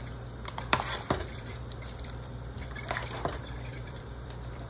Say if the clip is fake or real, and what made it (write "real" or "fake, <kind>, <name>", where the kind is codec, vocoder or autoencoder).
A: fake, vocoder, BigVGAN v2